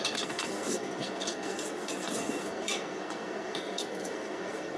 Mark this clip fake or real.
fake